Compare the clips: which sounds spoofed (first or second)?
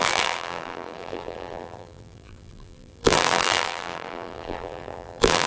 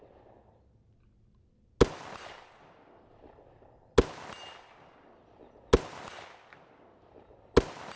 first